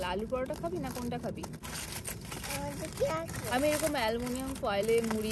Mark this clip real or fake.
real